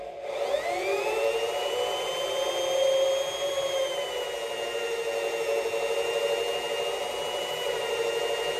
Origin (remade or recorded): recorded